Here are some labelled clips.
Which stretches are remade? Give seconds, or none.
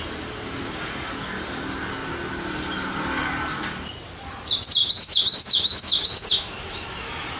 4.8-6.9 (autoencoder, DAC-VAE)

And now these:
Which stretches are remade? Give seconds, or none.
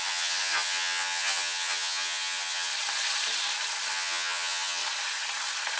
0.0-2.7 (vocoder, HiFi-GAN); 3.9-4.8